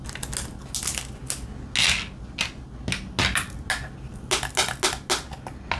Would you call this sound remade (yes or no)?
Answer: no